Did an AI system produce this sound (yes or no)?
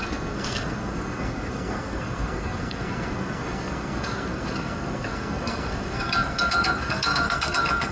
yes